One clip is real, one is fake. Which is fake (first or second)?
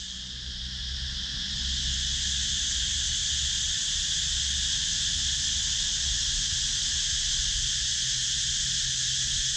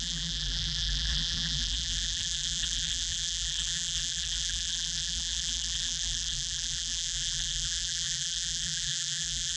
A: second